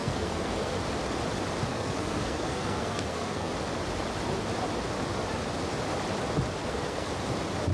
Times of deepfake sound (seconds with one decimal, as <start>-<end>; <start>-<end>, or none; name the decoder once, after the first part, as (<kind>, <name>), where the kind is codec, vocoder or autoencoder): 0.0-0.7 (codec, SNAC); 1.7-3.5; 6.6-7.1

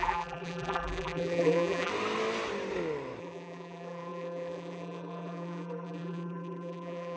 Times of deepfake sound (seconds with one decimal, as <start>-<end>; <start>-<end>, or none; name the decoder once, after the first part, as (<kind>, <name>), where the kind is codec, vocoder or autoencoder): 0.0-1.9 (vocoder, BigVGAN v2); 3.2-7.2

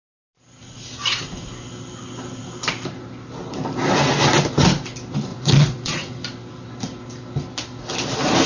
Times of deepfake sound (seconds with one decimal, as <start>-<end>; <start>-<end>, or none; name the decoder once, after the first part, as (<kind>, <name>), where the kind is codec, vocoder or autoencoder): 5.3-6.2 (vocoder, Vocos)

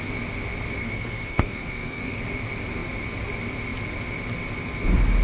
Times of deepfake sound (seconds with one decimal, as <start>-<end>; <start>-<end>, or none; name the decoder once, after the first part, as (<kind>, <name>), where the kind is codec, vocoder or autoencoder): 0.8-2.2 (codec, SNAC)